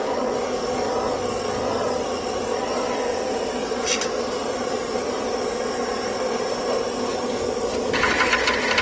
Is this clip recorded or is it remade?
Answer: recorded